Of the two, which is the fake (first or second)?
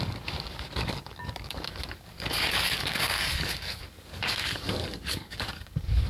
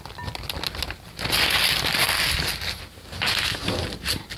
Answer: first